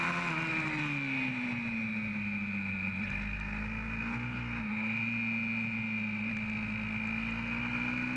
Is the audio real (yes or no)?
yes